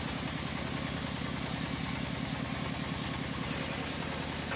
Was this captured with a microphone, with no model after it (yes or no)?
yes